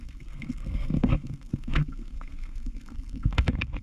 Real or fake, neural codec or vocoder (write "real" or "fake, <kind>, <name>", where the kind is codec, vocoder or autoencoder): fake, codec, SNAC